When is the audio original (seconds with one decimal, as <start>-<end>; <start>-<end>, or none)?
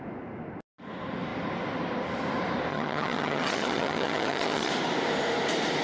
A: 0.0-2.7; 4.7-5.8